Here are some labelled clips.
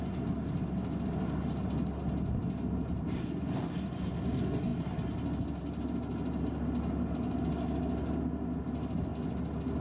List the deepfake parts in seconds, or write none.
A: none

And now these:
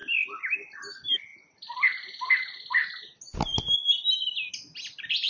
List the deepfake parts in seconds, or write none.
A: none

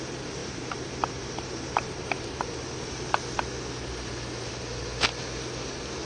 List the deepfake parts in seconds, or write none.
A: 0.4-3.4 (vocoder, BigVGAN v2)

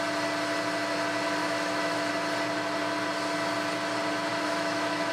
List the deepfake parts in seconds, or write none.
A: 1.4-2.1 (autoencoder, DAC-VAE); 4.3-5.1

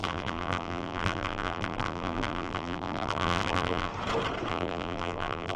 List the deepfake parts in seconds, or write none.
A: 0.0-3.9 (vocoder, BigVGAN v2); 4.5-5.6

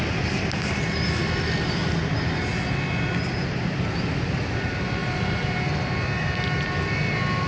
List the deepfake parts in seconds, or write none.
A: none